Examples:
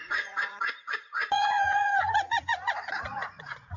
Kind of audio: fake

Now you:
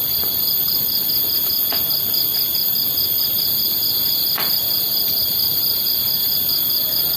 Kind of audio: real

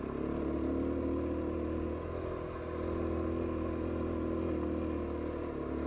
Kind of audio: real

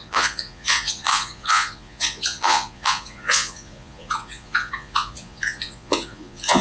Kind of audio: fake